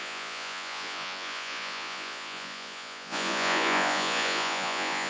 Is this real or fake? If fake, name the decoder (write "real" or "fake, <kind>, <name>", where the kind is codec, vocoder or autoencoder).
fake, vocoder, Vocos